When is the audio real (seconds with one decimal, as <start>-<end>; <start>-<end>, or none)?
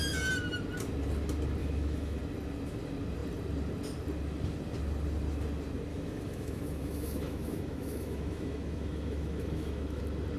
0.0-1.6; 2.2-5.9; 10.0-10.4